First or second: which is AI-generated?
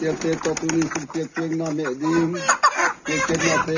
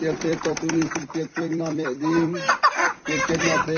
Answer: second